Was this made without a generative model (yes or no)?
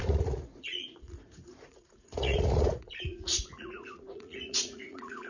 no